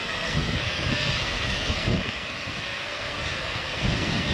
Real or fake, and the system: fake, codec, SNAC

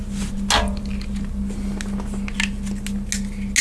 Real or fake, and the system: real